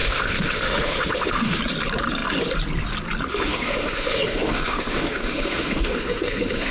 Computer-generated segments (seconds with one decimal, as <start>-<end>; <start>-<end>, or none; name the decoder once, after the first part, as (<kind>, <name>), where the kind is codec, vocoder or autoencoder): 0.0-1.6 (autoencoder, DAC-VAE); 3.3-6.7

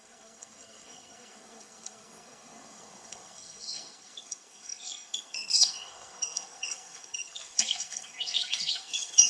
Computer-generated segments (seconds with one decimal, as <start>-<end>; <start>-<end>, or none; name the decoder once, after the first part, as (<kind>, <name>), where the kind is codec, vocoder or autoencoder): 0.0-9.3 (codec, SNAC)